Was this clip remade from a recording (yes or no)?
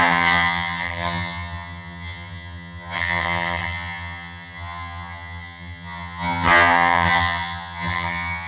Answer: yes